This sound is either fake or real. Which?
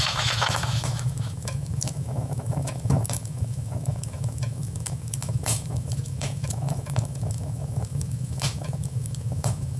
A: fake